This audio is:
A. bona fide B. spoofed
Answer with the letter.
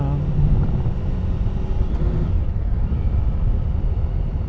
A